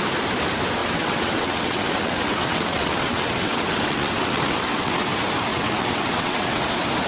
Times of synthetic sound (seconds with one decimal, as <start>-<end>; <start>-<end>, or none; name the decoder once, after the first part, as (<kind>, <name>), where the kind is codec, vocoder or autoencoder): 0.8-5.1 (vocoder, WaveNeXt); 5.5-6.6